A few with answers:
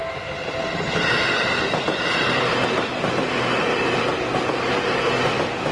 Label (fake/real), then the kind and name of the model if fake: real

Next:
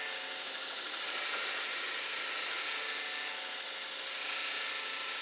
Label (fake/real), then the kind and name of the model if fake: real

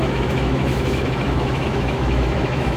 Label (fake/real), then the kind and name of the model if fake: fake, autoencoder, DAC-VAE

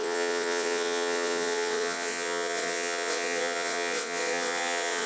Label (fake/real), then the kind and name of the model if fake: fake, vocoder, WaveNeXt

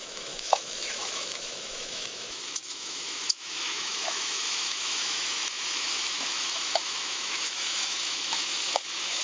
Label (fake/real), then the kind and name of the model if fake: fake, autoencoder, DAC-VAE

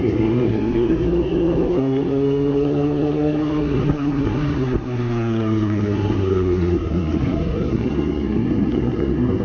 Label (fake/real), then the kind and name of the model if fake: fake, codec, SNAC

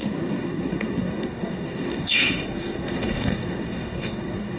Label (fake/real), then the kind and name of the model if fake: fake, codec, SNAC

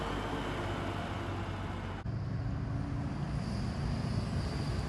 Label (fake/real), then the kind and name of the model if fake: real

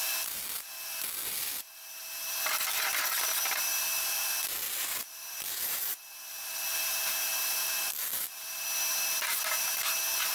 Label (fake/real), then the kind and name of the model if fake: real